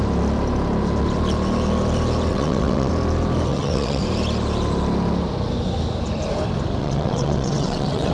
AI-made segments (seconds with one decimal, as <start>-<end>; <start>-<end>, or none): 2.3-2.9; 3.5-4.0; 6.8-8.1